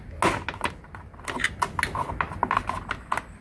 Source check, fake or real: real